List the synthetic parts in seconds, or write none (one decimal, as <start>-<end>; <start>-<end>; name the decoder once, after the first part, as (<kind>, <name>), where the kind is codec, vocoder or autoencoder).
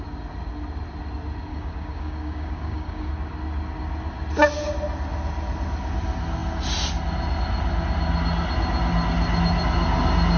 1.5-3.1 (codec, DAC)